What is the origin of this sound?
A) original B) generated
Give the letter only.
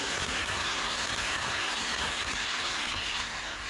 B